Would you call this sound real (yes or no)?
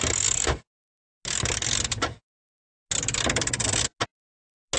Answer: yes